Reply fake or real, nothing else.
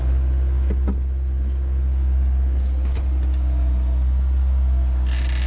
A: real